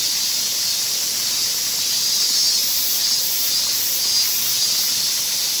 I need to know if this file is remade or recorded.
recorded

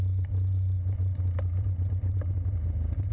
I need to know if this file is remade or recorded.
recorded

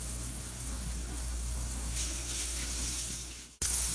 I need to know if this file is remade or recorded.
remade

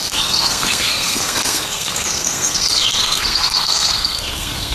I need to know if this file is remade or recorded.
remade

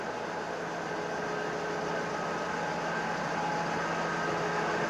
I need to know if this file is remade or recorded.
recorded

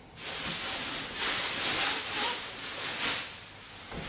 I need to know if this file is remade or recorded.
recorded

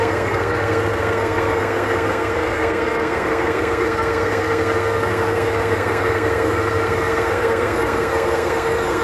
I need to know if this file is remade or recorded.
remade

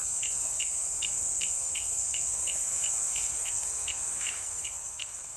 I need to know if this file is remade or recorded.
remade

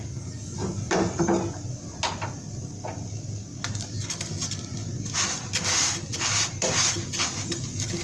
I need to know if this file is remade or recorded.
recorded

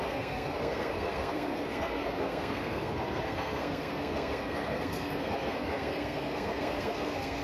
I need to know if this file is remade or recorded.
remade